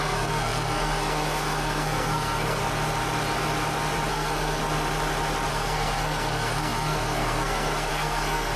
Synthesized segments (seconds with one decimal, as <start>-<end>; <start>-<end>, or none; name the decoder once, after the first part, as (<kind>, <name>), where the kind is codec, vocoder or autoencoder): 0.0-2.6 (codec, SNAC); 4.1-4.6; 5.5-8.6